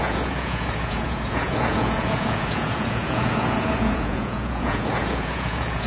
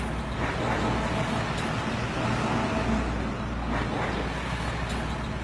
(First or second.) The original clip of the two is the second